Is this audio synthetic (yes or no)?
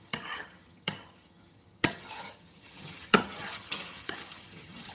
yes